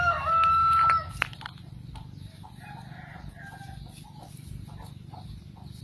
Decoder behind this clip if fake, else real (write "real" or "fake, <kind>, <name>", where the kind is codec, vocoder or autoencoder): real